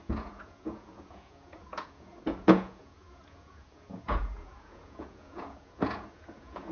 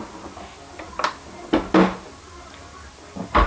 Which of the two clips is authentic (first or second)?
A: second